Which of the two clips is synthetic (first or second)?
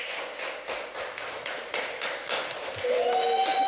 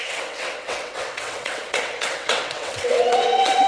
second